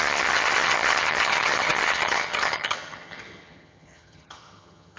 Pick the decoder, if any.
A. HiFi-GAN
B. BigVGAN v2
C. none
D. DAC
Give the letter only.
A